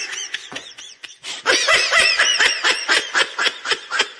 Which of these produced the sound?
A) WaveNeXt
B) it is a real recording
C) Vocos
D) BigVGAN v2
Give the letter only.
C